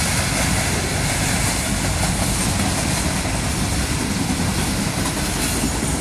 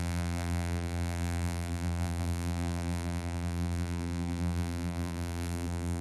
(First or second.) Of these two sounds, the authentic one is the first